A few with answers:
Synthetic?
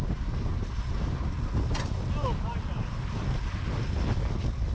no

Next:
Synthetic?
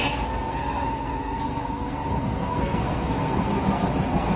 yes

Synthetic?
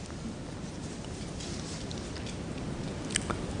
no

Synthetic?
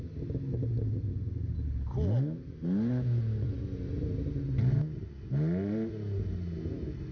no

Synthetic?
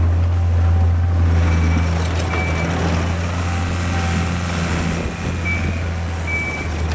no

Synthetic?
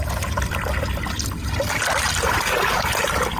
no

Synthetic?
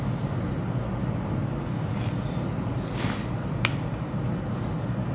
no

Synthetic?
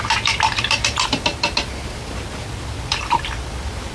yes